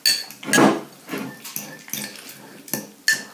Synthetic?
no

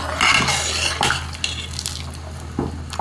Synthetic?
no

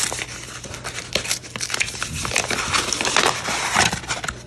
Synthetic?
no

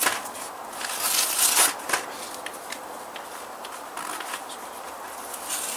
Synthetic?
no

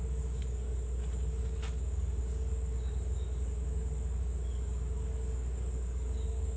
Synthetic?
yes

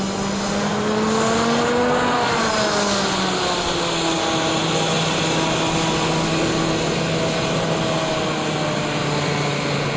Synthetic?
no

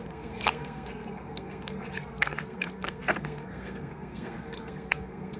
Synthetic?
yes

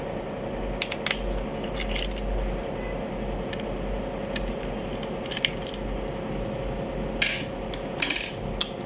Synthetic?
no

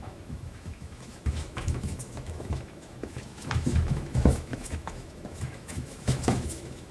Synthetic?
yes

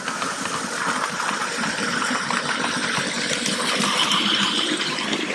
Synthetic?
yes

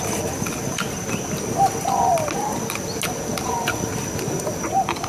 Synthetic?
no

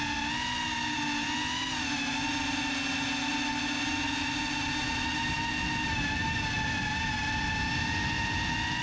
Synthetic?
no